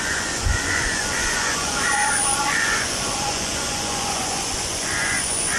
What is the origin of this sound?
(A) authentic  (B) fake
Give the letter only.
B